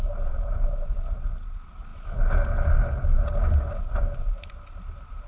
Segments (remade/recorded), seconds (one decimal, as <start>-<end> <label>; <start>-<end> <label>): 0.0-5.3 recorded